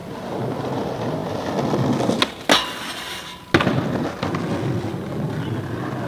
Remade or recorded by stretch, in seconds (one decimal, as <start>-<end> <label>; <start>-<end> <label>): 0.0-6.1 recorded